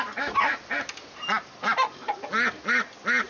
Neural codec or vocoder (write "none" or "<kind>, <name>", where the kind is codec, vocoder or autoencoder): none